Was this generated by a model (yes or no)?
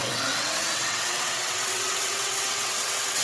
yes